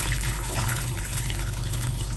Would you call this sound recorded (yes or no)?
no